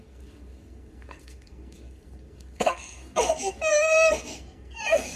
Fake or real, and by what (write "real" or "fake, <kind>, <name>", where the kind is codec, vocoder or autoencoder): fake, codec, SNAC